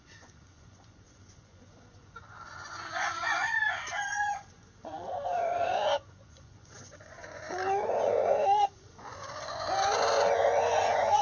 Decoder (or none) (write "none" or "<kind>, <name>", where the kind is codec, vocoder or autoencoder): vocoder, Vocos